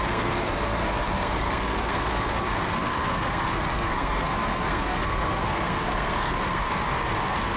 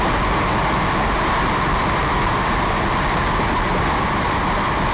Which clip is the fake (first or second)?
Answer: first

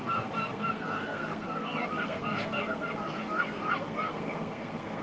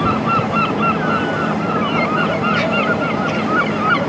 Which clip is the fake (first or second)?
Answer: first